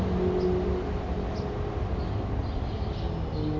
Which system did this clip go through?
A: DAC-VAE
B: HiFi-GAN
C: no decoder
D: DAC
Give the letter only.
C